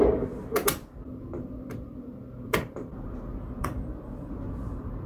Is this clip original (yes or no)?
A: no